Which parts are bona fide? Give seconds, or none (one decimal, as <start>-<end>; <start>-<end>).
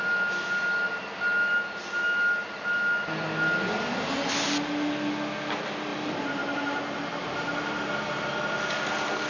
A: 0.0-5.9; 6.8-7.2; 8.4-9.3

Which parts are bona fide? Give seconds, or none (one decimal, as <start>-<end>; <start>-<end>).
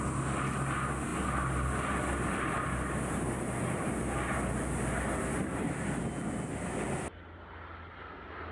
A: 0.0-8.5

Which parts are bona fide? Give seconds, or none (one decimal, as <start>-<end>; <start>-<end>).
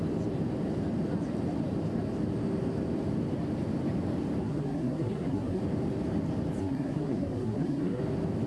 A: 0.0-4.4; 5.6-6.6; 8.0-8.5